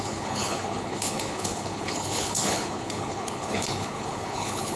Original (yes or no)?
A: no